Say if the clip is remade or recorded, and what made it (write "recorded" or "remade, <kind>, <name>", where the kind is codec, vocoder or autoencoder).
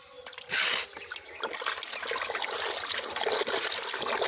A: recorded